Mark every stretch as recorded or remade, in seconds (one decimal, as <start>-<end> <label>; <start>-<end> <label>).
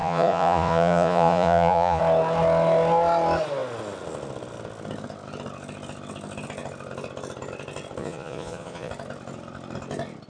0.0-2.0 remade; 2.0-8.0 recorded; 8.0-8.9 remade; 8.9-10.3 recorded